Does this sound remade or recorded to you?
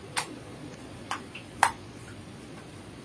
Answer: remade